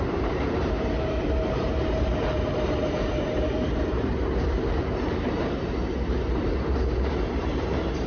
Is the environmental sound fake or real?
fake